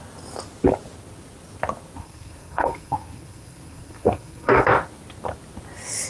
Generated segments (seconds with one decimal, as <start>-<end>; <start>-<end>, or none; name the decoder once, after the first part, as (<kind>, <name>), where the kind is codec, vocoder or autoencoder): 2.0-4.6 (codec, SNAC)